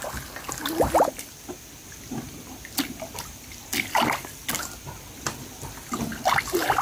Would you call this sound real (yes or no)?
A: yes